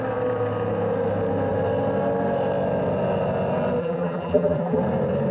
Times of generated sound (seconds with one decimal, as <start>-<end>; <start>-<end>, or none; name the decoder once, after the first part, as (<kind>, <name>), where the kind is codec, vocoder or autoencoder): 3.8-4.8 (vocoder, BigVGAN v2)